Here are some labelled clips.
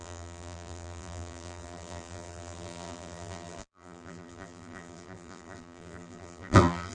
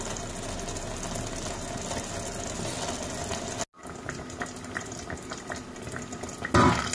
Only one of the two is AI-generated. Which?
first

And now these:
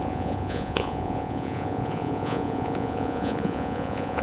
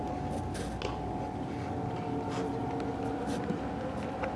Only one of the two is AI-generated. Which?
first